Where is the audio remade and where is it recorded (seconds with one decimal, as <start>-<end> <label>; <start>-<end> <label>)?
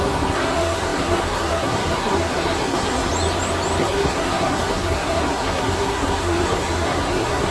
0.0-3.1 remade; 3.1-3.8 recorded; 3.8-7.5 remade